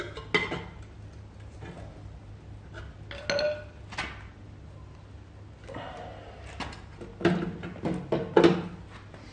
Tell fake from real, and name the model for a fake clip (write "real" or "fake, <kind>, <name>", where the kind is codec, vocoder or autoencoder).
real